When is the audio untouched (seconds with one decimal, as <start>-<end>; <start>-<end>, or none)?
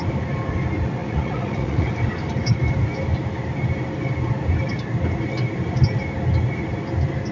0.0-1.0; 1.9-7.3